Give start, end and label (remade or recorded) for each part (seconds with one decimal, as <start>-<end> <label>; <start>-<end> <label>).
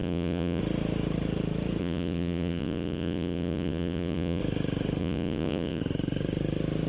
0.0-0.6 remade; 0.6-1.8 recorded; 1.8-4.4 remade; 4.4-5.0 recorded; 5.0-5.8 remade; 5.8-6.9 recorded